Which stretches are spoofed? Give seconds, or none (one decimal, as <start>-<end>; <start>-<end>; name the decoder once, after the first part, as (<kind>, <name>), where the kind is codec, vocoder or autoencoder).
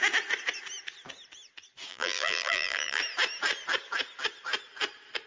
1.9-3.0 (vocoder, BigVGAN v2)